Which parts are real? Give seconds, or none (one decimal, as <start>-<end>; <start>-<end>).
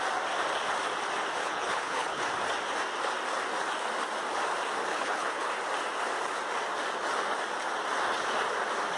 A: 0.0-1.4; 2.2-4.9; 5.5-9.0